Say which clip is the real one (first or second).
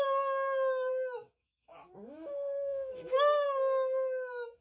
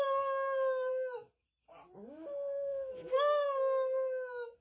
second